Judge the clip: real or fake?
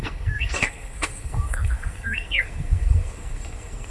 fake